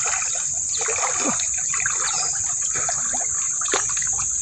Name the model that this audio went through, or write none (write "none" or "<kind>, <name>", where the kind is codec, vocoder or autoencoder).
vocoder, BigVGAN v2